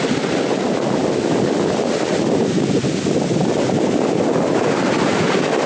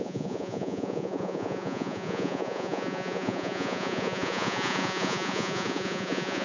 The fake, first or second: second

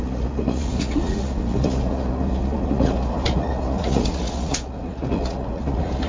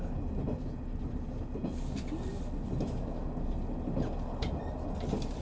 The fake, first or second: first